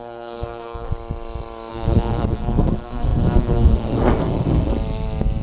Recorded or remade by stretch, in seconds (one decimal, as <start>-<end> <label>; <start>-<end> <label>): 0.0-0.9 remade; 0.9-1.7 recorded; 1.7-4.7 remade; 4.7-5.4 recorded